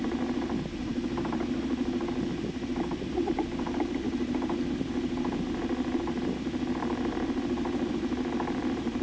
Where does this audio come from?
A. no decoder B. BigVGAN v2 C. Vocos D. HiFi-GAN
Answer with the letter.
A